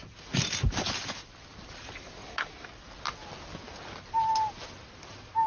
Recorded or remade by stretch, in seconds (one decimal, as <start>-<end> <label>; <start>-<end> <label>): 0.0-5.5 recorded